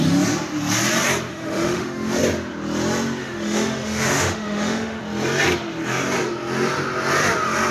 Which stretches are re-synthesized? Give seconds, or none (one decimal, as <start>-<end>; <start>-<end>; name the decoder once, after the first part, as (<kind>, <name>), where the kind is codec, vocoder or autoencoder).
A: 1.3-2.2 (autoencoder, DAC-VAE); 3.2-5.0